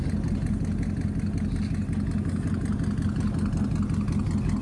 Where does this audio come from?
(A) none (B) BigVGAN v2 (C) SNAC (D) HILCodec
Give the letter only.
A